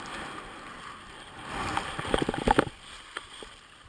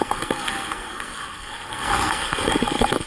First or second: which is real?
first